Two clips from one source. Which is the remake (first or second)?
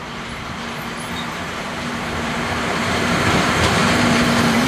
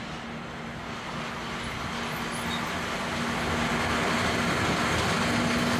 first